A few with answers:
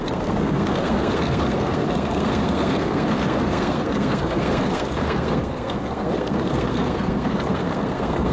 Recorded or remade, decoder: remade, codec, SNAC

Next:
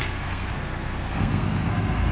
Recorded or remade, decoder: remade, codec, SNAC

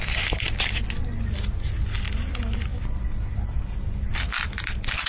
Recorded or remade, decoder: recorded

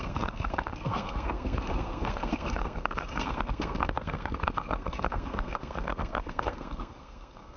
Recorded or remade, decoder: remade, codec, SNAC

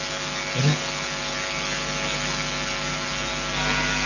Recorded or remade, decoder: recorded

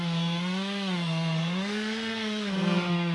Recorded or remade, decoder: remade, codec, SNAC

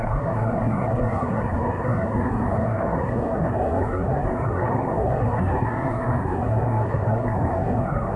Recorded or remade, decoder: remade, codec, SNAC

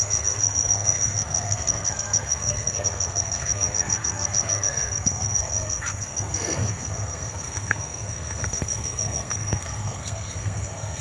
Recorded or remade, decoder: remade, codec, SNAC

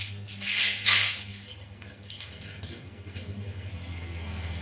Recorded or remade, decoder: remade, codec, SNAC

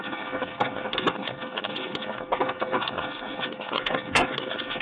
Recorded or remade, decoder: remade, codec, SNAC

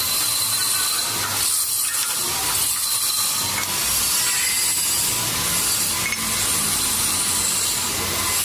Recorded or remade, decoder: recorded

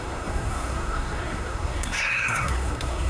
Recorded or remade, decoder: remade, codec, SNAC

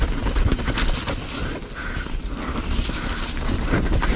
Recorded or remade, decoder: recorded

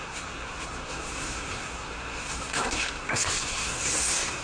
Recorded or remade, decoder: remade, codec, SNAC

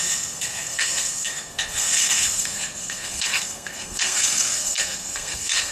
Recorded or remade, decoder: remade, codec, SNAC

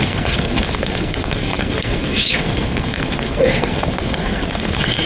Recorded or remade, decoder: remade, codec, SNAC